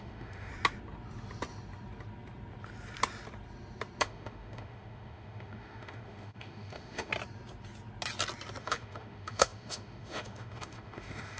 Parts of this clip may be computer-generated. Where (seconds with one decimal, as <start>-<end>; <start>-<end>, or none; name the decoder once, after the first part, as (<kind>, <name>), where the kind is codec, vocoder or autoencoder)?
0.0-0.5 (autoencoder, DAC-VAE); 4.0-7.1; 8.6-11.4